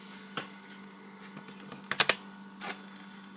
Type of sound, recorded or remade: recorded